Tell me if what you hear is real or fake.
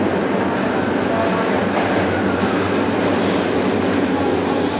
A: real